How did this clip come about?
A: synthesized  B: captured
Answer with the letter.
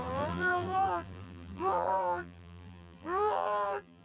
A